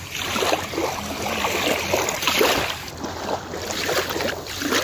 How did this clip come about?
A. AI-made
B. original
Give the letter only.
B